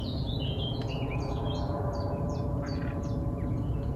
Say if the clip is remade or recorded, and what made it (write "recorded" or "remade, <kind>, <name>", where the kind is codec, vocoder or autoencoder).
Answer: remade, vocoder, Vocos